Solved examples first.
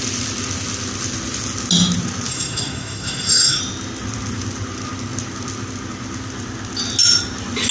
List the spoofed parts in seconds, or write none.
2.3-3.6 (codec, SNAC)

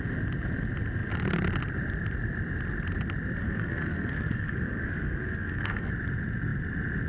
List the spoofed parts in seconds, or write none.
3.4-5.9 (codec, SNAC)